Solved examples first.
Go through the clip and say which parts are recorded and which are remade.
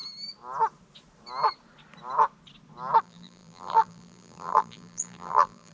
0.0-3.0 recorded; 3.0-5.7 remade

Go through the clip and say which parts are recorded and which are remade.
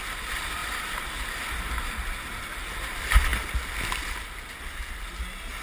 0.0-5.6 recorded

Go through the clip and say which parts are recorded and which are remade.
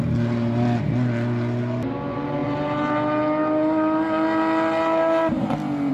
0.0-5.9 recorded